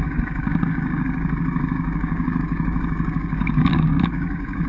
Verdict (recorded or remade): remade